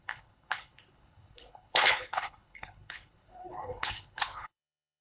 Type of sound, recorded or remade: remade